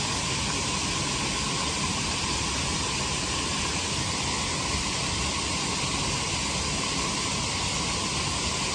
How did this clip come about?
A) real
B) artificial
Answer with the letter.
A